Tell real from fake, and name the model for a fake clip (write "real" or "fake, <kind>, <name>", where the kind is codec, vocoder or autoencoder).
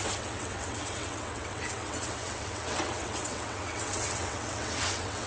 fake, vocoder, WaveNeXt